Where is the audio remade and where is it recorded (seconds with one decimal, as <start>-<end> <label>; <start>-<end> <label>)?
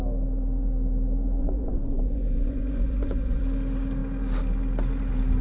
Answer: 0.0-1.4 recorded; 1.4-3.4 remade; 3.4-5.4 recorded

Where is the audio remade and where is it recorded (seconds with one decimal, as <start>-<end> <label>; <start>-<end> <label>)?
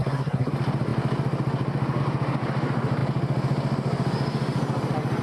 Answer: 0.0-0.5 remade; 0.5-5.2 recorded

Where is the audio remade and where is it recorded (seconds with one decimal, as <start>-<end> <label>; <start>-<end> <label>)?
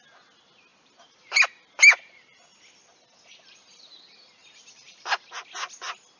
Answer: 0.0-6.2 recorded